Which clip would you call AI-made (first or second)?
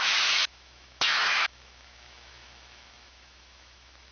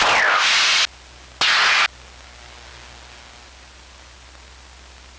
first